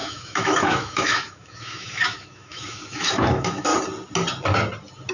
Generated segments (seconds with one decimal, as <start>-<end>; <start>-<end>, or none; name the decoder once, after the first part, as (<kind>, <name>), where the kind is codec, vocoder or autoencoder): 0.0-3.7 (autoencoder, DAC-VAE)